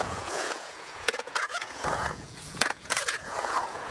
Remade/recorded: remade